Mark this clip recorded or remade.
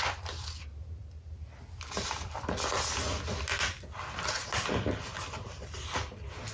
recorded